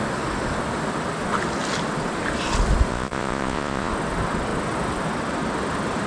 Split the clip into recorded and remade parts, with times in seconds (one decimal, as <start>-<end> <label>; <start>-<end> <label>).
0.0-2.9 recorded; 2.9-3.9 remade; 3.9-6.1 recorded